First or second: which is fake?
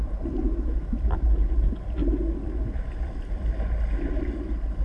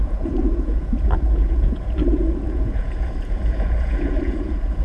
second